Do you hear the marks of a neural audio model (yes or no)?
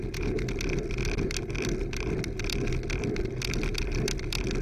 no